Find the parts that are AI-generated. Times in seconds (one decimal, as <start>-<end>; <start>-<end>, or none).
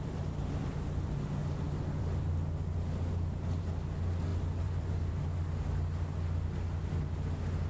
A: 1.4-2.2; 4.3-5.2